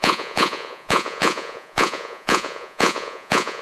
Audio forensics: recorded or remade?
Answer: remade